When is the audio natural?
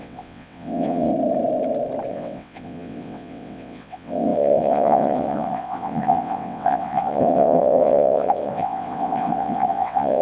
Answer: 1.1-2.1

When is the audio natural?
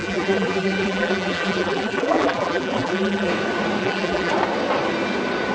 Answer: 3.3-3.8; 4.3-5.5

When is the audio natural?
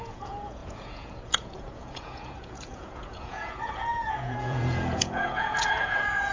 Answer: none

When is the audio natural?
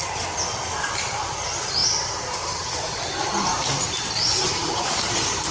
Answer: 0.0-1.8; 5.1-5.5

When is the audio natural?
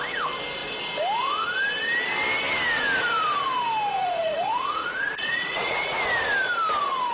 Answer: 0.0-3.9; 6.0-7.1